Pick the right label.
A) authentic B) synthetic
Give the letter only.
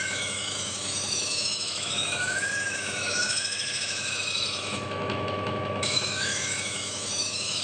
B